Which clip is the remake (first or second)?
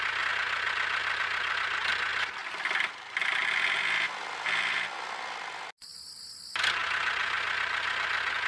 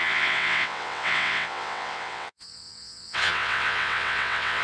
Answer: second